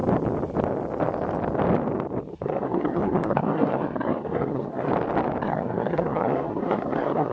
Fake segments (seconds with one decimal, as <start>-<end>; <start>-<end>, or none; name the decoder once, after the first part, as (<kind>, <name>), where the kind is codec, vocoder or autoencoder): 2.3-4.9 (codec, SNAC); 5.4-7.3